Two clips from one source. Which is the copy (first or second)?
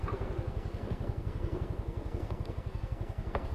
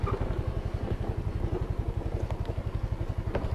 first